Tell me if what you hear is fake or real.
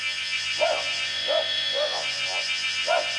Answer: fake